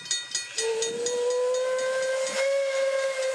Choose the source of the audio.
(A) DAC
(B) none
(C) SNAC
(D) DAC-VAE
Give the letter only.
B